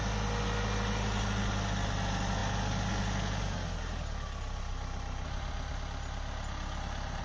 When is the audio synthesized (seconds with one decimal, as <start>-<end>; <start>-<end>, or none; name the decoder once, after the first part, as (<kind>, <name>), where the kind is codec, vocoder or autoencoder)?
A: none

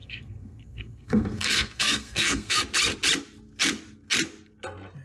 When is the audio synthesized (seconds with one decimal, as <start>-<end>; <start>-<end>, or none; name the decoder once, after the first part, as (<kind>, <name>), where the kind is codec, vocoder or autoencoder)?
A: 0.0-2.6 (codec, SNAC)

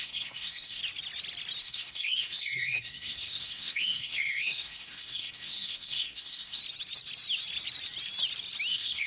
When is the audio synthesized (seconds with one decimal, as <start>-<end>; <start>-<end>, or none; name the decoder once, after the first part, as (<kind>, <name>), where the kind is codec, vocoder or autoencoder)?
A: 0.0-0.8 (codec, SNAC); 1.6-6.6; 8.7-9.1

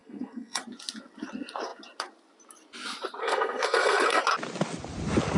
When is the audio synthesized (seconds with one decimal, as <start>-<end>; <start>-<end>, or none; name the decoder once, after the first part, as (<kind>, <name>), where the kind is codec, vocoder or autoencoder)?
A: 0.0-0.6 (codec, SNAC); 3.2-4.2

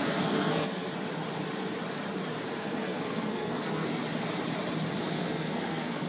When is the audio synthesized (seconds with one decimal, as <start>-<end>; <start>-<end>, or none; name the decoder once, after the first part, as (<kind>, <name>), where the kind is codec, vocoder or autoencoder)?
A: 0.0-0.9 (codec, SNAC); 2.5-4.0; 5.0-6.1